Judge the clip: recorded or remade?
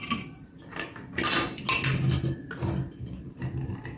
recorded